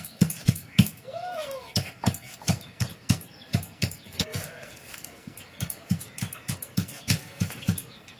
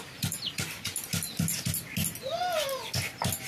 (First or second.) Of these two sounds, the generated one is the first